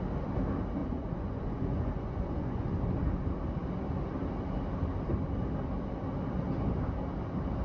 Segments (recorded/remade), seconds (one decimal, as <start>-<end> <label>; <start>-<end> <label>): 0.0-0.8 recorded; 0.8-2.8 remade; 2.8-7.6 recorded